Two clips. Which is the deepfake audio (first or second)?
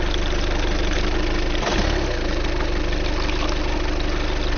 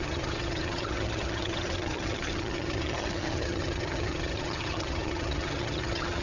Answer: second